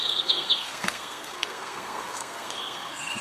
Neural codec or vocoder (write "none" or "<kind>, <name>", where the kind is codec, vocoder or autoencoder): codec, SNAC